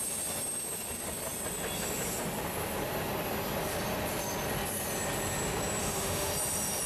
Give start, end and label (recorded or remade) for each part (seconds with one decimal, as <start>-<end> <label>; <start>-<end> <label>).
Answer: 0.0-5.8 recorded; 5.8-6.3 remade; 6.3-6.9 recorded